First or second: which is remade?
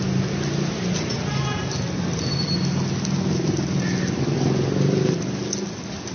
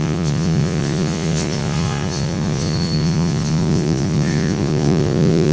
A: second